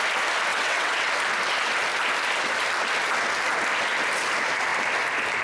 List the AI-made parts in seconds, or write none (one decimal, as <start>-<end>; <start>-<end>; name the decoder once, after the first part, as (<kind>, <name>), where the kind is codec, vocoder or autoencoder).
0.5-1.1 (vocoder, WaveNeXt)